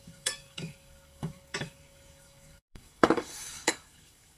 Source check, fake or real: fake